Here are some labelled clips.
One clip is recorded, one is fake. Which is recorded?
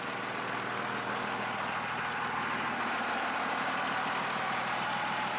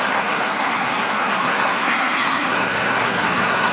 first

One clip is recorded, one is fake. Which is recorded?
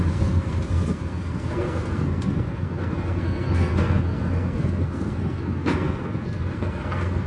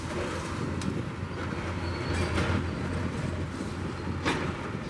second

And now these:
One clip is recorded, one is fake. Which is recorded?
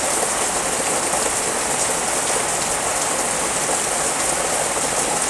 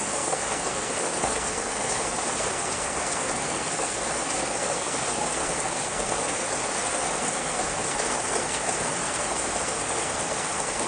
first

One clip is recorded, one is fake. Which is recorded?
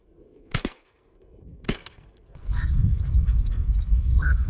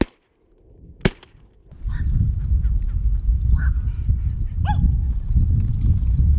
second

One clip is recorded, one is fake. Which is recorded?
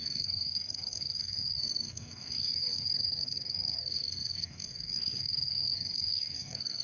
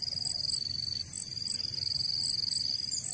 second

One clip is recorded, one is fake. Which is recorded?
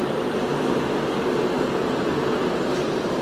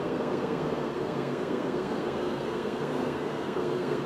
first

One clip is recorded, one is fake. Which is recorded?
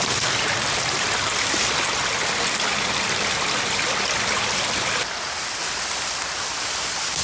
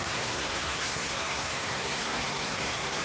first